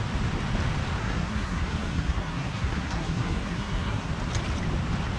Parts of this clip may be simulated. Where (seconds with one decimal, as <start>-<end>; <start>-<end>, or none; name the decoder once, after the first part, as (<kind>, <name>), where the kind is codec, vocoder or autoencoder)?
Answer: 1.0-4.1 (codec, SNAC)